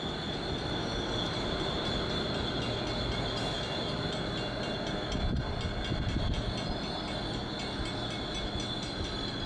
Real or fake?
real